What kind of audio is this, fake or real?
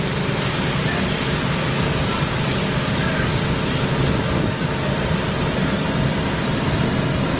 real